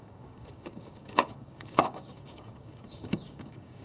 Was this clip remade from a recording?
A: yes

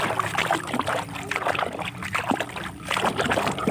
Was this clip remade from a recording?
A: no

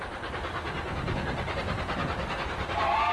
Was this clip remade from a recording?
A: no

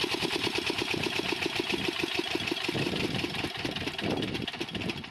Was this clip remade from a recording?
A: no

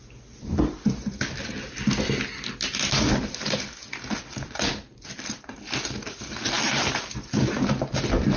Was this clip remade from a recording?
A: no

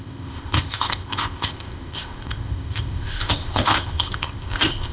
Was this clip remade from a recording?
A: yes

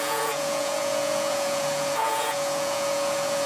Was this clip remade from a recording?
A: yes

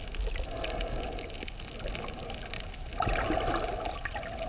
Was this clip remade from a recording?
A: no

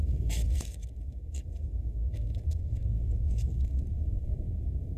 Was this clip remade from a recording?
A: yes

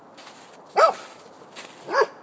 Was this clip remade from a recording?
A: no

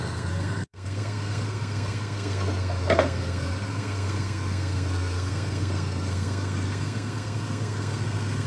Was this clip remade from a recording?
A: yes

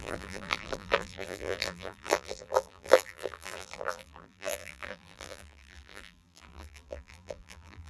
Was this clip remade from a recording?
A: yes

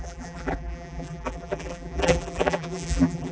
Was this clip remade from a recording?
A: yes